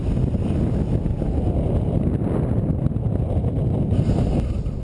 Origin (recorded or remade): recorded